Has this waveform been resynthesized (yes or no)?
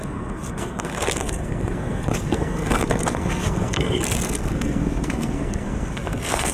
yes